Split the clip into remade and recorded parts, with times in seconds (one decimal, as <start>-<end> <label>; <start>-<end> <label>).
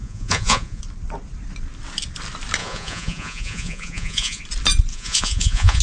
0.0-0.8 remade; 0.8-2.6 recorded; 2.6-4.4 remade; 4.4-4.9 recorded; 4.9-5.8 remade